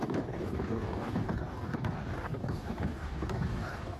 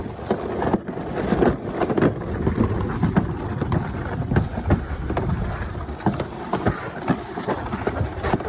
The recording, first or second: second